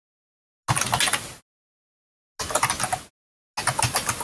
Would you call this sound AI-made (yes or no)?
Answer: no